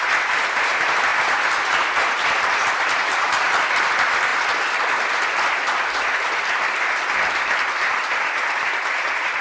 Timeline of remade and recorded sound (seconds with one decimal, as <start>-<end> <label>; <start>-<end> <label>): 0.0-9.4 recorded

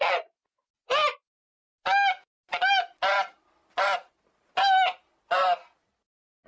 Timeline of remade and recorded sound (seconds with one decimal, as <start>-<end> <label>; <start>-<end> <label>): 0.0-6.5 recorded

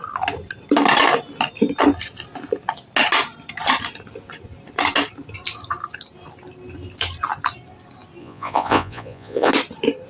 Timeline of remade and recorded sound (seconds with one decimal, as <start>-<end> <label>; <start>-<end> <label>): 0.0-8.2 recorded; 8.2-9.5 remade; 9.5-10.1 recorded

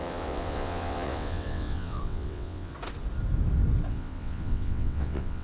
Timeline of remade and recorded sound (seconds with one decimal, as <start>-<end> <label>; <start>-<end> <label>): 0.0-2.7 remade; 2.7-3.9 recorded; 3.9-5.4 remade

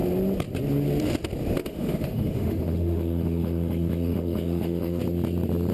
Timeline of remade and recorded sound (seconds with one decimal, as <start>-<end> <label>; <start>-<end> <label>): 0.0-1.6 recorded; 1.6-5.0 remade; 5.0-5.7 recorded

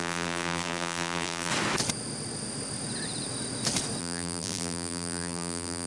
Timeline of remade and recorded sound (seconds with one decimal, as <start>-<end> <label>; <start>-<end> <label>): 0.0-1.5 remade; 1.5-4.0 recorded; 4.0-5.9 remade

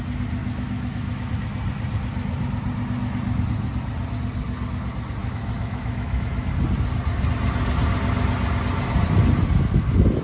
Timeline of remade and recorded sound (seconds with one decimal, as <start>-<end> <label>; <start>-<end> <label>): 0.0-0.4 recorded; 0.4-1.3 remade; 1.3-5.2 recorded; 5.2-6.5 remade; 6.5-10.2 recorded